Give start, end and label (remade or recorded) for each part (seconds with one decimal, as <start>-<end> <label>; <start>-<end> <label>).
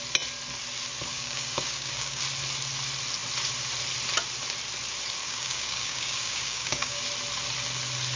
0.0-1.1 recorded; 1.1-2.2 remade; 2.2-5.2 recorded; 5.2-7.0 remade; 7.0-8.2 recorded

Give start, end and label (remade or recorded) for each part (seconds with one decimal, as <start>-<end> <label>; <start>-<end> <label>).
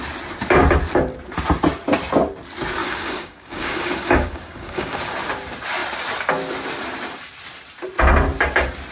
0.0-2.8 recorded; 2.8-5.0 remade; 5.0-8.9 recorded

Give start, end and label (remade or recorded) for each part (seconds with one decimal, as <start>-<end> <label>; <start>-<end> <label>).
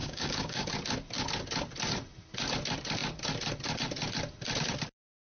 0.0-0.7 remade; 0.7-5.2 recorded